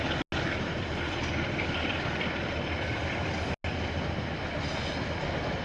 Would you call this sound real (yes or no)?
yes